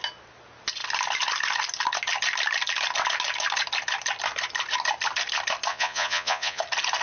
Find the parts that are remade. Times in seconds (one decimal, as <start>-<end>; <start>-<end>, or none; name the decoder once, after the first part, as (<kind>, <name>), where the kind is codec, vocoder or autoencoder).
5.7-6.6 (vocoder, Vocos)